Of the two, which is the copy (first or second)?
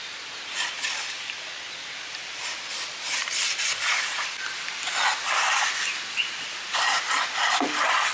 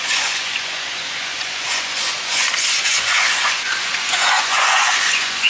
second